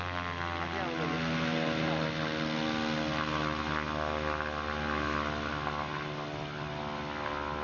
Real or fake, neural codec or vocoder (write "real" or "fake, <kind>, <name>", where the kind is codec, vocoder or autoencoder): real